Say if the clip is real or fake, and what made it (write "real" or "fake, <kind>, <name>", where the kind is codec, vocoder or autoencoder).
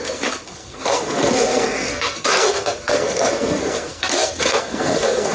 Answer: fake, codec, SNAC